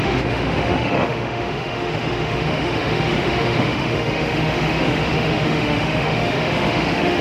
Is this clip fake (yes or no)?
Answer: yes